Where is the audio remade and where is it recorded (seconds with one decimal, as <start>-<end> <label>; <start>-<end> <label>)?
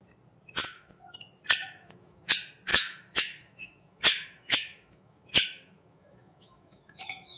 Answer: 0.0-0.6 recorded; 0.6-1.2 remade; 1.2-1.6 recorded; 1.6-2.3 remade; 2.3-2.7 recorded; 2.7-7.4 remade